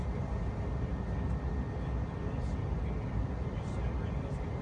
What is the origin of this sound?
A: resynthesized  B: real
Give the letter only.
B